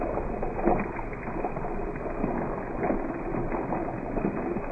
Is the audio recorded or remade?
recorded